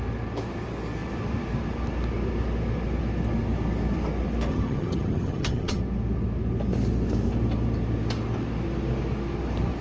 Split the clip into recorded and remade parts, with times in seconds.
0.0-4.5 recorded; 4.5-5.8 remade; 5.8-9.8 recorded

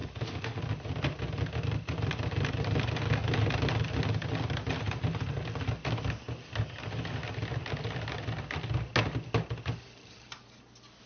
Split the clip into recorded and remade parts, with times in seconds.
0.0-0.6 remade; 0.6-11.1 recorded